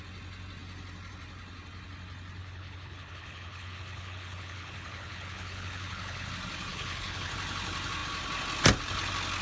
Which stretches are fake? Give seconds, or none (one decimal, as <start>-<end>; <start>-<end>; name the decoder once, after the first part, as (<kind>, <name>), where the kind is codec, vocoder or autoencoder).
2.4-6.3 (codec, HILCodec); 6.7-7.3